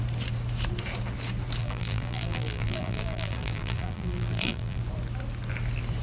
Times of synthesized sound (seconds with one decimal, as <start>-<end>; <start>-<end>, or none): 1.6-4.8